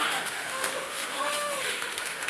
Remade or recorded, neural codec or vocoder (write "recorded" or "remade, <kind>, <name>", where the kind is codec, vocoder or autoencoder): remade, autoencoder, DAC-VAE